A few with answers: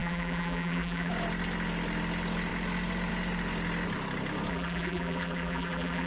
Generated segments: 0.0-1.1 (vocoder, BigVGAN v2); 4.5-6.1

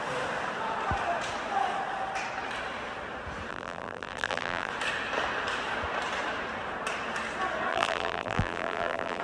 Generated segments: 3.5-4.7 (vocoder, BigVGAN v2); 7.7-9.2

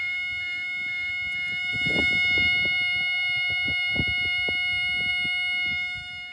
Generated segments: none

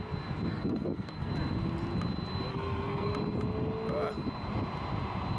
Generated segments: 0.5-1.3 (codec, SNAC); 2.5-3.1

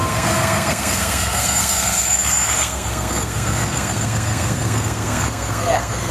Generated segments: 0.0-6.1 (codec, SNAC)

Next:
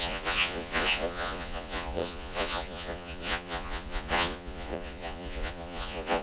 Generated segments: 0.0-6.2 (vocoder, Vocos)